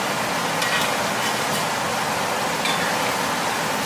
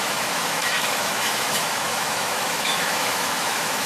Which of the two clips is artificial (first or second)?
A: second